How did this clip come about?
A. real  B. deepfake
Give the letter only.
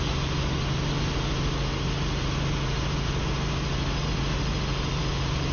A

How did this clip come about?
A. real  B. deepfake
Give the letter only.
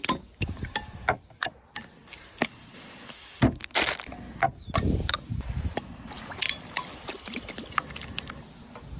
A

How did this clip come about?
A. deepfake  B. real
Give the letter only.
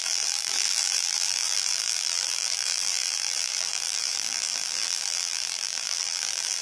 A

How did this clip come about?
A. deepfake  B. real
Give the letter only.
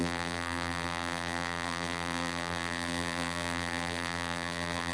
A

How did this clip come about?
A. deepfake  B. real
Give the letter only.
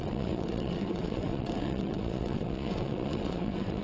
A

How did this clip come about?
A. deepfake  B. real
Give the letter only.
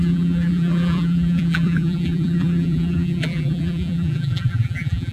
A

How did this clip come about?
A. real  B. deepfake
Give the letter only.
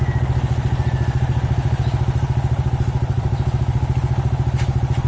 A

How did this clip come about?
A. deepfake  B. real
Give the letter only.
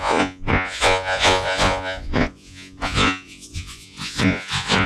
A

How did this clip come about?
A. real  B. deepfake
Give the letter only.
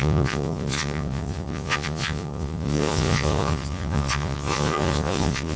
B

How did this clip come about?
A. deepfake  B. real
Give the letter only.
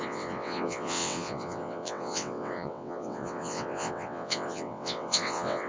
A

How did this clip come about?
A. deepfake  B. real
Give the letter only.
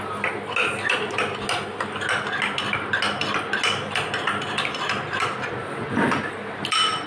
B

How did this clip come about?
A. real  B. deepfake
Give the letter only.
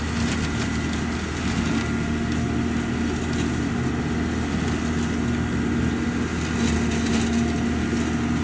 A